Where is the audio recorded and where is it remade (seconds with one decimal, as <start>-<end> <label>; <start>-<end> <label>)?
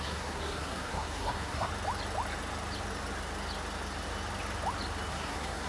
0.0-1.7 remade; 1.7-5.1 recorded; 5.1-5.7 remade